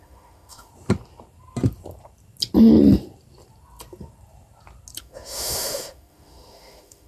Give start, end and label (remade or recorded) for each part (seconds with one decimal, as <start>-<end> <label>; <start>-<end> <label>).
0.0-0.7 remade; 0.7-5.0 recorded; 5.0-7.1 remade